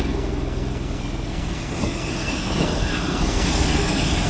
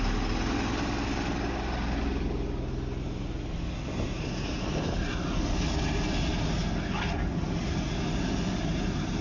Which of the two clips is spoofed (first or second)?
first